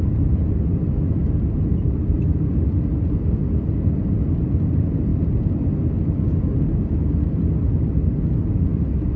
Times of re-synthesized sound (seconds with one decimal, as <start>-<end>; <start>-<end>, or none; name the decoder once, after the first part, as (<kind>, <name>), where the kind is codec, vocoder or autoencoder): none